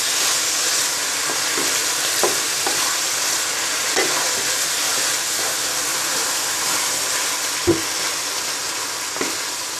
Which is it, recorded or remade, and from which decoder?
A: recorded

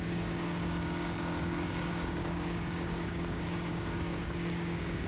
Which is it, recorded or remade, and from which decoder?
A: remade, codec, DAC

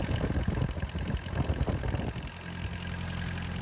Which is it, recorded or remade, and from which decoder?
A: recorded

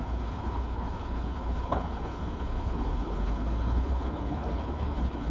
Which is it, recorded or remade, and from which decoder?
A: remade, codec, HILCodec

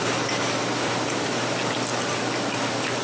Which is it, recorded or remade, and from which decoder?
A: recorded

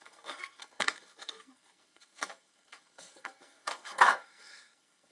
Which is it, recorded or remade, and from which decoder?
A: remade, codec, SNAC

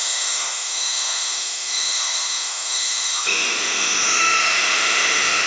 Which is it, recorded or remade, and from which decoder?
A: remade, autoencoder, DAC-VAE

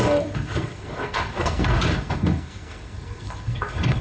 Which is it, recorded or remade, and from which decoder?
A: remade, codec, SNAC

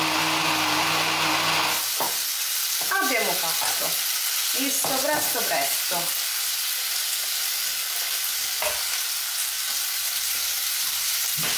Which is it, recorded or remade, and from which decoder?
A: recorded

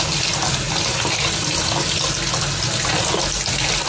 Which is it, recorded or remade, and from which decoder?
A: recorded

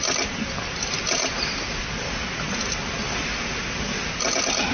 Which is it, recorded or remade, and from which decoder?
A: recorded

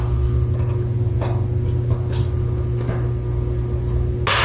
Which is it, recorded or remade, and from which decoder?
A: recorded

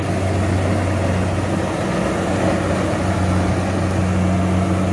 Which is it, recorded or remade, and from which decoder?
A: recorded